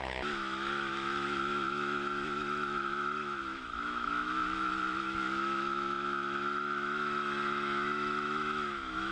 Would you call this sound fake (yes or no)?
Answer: yes